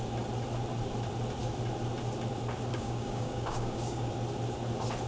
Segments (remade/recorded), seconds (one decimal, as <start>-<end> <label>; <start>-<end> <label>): 0.0-2.7 recorded; 2.7-4.1 remade; 4.1-5.1 recorded